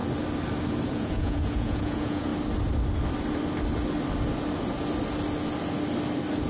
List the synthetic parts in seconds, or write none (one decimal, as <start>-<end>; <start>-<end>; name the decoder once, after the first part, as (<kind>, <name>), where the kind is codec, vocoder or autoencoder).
0.9-2.3 (vocoder, Vocos)